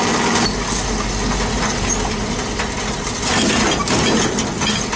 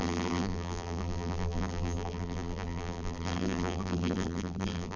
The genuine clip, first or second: first